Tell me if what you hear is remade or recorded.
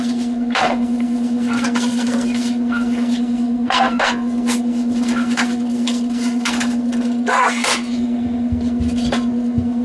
remade